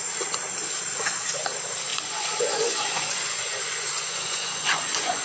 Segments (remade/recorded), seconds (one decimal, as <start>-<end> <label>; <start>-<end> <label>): 0.0-1.9 recorded; 1.9-5.2 remade